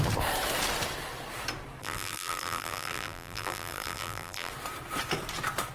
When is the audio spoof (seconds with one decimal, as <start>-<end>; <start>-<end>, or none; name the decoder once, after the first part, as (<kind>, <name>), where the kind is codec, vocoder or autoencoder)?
1.8-4.5 (vocoder, BigVGAN v2)